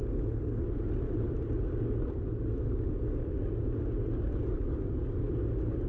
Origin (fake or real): real